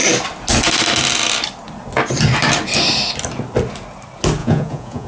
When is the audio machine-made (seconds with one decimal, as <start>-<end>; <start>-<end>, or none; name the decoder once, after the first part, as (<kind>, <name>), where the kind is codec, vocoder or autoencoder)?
4.4-5.1 (vocoder, Vocos)